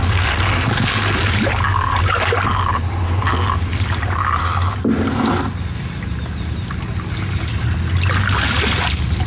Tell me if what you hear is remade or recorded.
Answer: recorded